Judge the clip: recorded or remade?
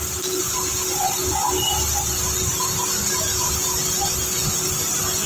recorded